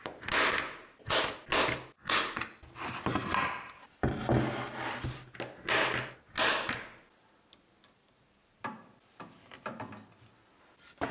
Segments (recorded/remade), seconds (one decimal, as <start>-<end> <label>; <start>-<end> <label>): 0.0-11.1 recorded